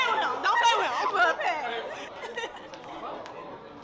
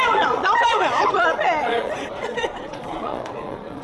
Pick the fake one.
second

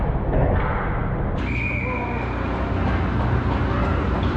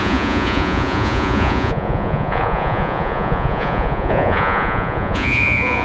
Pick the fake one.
second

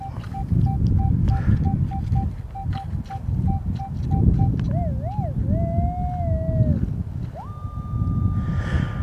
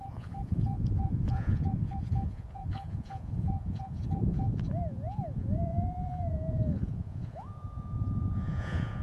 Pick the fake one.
second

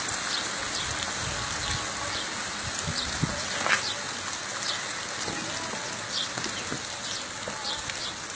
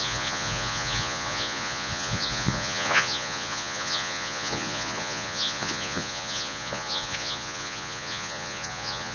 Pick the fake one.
second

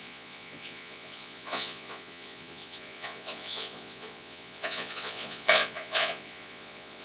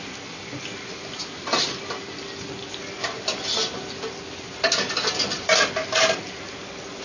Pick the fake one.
first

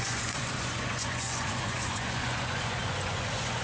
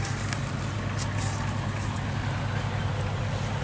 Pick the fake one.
first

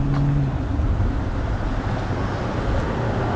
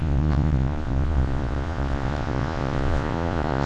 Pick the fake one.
second